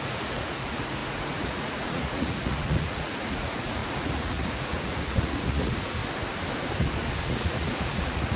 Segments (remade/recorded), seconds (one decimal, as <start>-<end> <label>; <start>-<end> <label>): 0.0-6.0 remade; 6.0-7.2 recorded; 7.2-8.4 remade

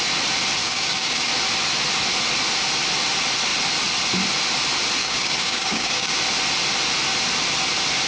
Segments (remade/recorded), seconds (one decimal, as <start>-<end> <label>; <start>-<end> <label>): 0.0-0.6 recorded; 0.6-1.3 remade; 1.3-5.0 recorded; 5.0-6.1 remade; 6.1-8.1 recorded

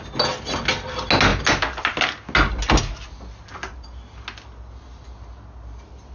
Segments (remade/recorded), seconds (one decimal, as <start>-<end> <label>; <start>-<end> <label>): 0.0-6.1 recorded

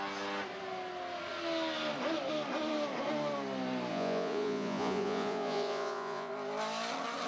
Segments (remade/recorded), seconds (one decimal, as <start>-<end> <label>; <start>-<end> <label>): 0.0-3.9 recorded; 3.9-6.3 remade; 6.3-7.3 recorded

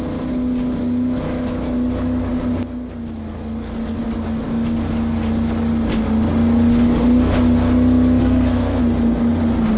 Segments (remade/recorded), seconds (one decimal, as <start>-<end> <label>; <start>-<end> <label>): 0.0-8.2 recorded; 8.2-8.8 remade; 8.8-9.8 recorded

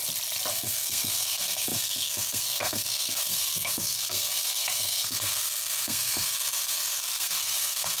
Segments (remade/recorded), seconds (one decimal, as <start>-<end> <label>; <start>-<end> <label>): 0.0-0.5 recorded; 0.5-8.0 remade

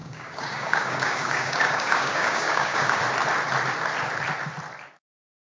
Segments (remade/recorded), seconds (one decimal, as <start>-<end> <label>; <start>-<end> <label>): 0.0-3.0 remade; 3.0-5.5 recorded

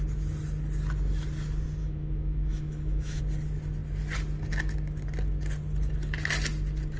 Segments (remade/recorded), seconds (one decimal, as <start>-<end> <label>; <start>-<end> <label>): 0.0-1.8 recorded; 1.8-3.2 remade; 3.2-7.0 recorded